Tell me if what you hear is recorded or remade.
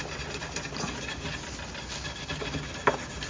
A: recorded